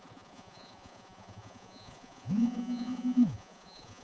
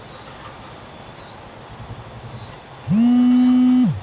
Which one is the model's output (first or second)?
first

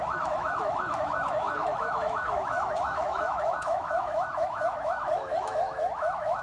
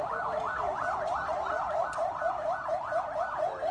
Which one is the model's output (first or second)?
first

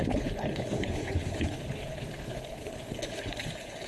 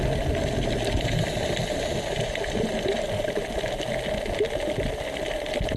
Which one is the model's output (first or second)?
first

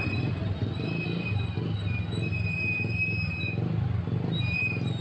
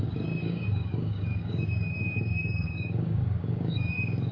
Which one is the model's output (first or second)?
second